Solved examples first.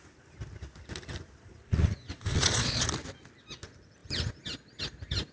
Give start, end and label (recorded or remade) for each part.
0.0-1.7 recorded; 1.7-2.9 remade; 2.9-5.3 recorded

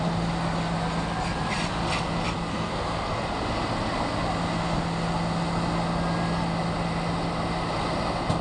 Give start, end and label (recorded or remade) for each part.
0.0-2.5 recorded; 2.5-3.2 remade; 3.2-8.4 recorded

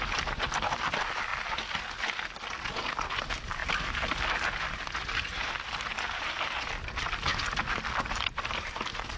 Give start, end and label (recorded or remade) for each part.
0.0-3.6 recorded; 3.6-5.4 remade; 5.4-7.3 recorded; 7.3-9.2 remade